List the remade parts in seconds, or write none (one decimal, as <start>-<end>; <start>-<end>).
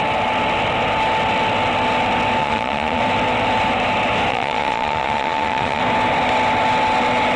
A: 2.4-3.0; 4.3-5.8